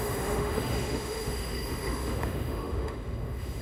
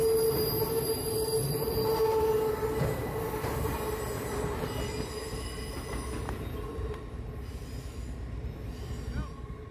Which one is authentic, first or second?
second